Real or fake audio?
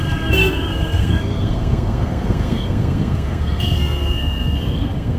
fake